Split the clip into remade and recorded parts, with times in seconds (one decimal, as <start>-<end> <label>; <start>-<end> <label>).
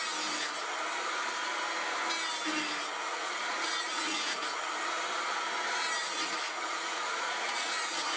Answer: 0.0-3.0 recorded; 3.0-4.4 remade; 4.4-6.0 recorded; 6.0-8.2 remade